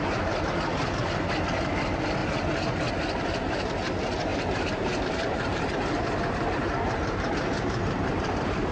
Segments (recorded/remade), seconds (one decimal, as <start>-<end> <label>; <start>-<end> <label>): 0.0-4.3 recorded; 4.3-8.7 remade